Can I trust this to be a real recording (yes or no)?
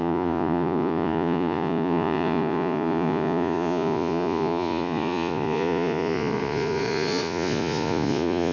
no